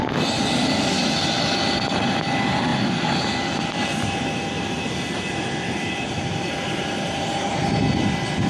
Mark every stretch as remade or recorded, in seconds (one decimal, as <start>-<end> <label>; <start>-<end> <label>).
0.0-8.5 recorded